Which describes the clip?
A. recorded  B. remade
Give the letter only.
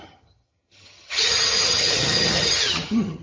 B